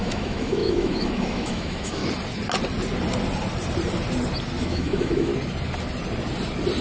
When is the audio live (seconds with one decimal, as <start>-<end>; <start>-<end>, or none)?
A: 2.0-4.6; 5.3-6.8